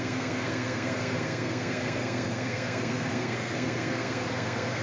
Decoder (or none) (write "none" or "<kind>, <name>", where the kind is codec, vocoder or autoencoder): codec, SNAC